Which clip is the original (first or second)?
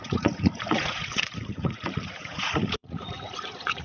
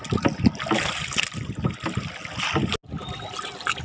second